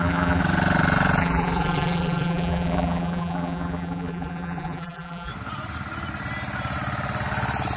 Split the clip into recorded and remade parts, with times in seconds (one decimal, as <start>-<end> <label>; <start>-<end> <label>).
0.0-0.4 remade; 0.4-1.2 recorded; 1.2-5.3 remade; 5.3-7.8 recorded